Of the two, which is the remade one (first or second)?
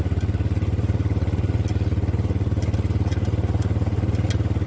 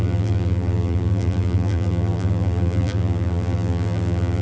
second